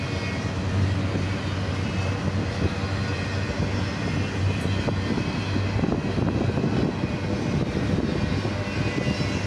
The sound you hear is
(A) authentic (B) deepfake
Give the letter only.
A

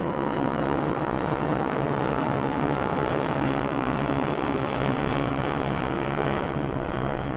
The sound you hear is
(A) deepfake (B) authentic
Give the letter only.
A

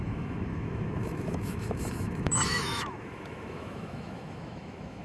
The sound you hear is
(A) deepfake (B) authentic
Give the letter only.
A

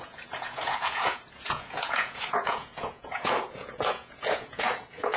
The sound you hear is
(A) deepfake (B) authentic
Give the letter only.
A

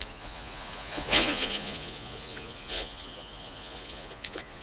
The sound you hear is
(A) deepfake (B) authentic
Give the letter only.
A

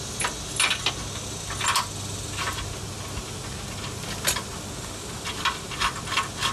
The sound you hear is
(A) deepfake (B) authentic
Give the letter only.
B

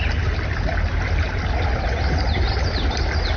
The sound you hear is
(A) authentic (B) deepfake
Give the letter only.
A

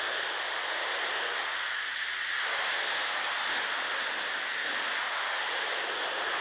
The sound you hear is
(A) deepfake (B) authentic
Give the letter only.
B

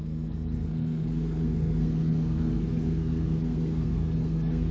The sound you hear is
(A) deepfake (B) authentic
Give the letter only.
A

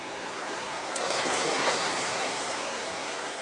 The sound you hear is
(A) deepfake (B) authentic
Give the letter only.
A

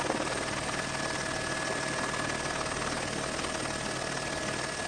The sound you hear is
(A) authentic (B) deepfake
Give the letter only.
A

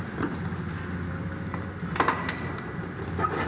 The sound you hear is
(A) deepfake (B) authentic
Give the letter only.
B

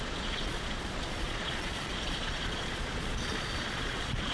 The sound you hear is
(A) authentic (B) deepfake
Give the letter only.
B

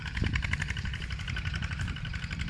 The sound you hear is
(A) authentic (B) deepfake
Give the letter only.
A